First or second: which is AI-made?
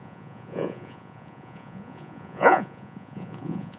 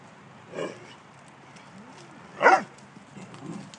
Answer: first